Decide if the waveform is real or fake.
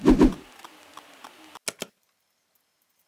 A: real